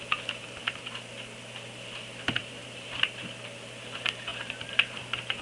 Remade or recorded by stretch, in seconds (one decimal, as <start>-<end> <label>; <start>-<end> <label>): 0.0-2.4 recorded; 2.4-3.3 remade; 3.3-4.3 recorded; 4.3-5.0 remade; 5.0-5.4 recorded